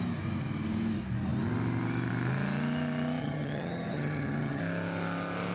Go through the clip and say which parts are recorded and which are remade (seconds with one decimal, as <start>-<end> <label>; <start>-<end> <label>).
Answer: 0.0-3.2 recorded; 3.2-4.6 remade; 4.6-5.5 recorded